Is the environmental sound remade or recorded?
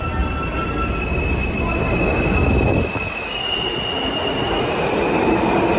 recorded